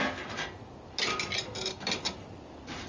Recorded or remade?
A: recorded